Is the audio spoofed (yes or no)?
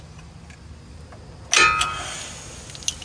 no